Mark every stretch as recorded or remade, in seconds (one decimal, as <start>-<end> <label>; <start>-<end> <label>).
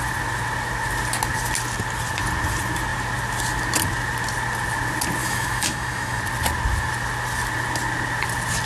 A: 0.0-5.2 recorded; 5.2-6.2 remade; 6.2-8.7 recorded